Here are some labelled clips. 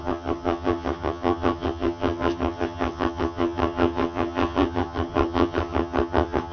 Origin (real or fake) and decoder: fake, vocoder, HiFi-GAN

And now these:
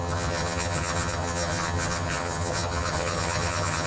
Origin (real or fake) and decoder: fake, vocoder, HiFi-GAN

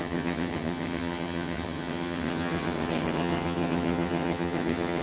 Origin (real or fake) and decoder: fake, vocoder, HiFi-GAN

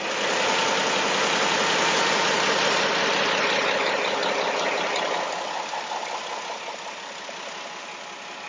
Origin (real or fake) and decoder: real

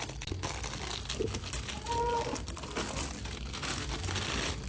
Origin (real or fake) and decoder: real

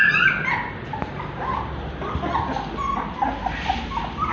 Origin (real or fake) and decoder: real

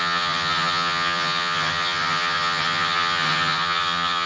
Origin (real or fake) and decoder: fake, vocoder, HiFi-GAN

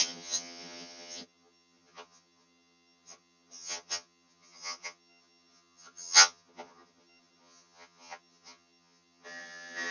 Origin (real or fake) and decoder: fake, vocoder, HiFi-GAN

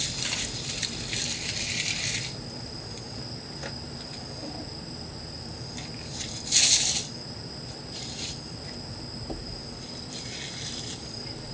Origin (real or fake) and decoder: real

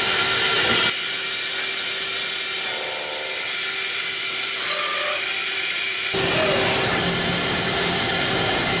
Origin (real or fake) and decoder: real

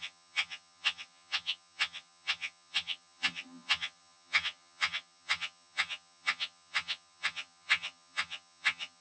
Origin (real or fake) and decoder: fake, vocoder, HiFi-GAN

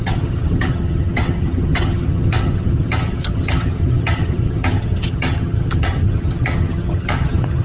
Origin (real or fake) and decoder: fake, vocoder, HiFi-GAN